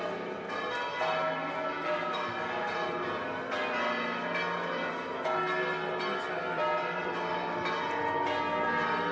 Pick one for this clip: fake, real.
real